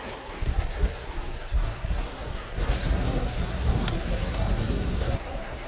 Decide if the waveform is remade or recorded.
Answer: remade